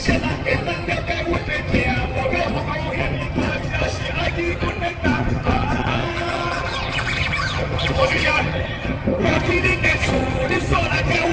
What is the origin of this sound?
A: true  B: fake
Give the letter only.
B